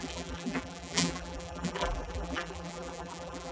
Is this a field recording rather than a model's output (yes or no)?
no